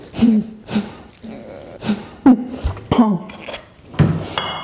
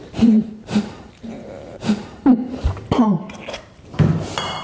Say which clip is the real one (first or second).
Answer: first